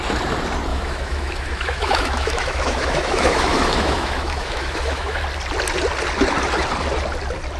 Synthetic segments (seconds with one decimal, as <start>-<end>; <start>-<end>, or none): 0.7-5.2